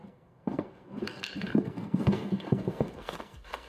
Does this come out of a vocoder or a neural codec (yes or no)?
yes